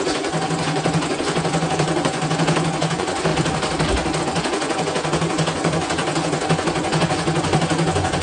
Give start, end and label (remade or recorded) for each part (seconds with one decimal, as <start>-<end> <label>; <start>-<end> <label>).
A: 0.0-3.3 remade; 3.3-4.2 recorded; 4.2-8.2 remade